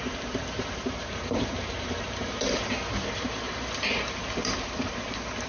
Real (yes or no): no